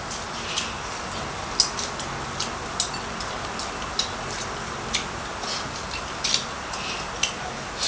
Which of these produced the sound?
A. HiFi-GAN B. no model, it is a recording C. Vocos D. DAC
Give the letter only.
B